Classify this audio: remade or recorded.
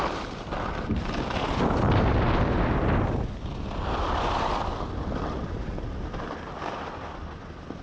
recorded